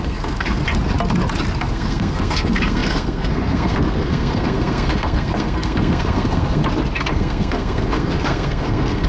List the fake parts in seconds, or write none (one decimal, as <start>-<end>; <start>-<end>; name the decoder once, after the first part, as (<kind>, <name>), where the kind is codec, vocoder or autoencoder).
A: 0.0-0.6 (codec, SNAC); 1.6-6.6; 7.1-9.1